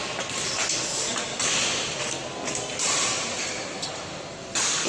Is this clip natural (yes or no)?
yes